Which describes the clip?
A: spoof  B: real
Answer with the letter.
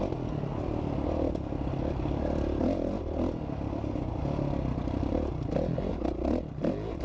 B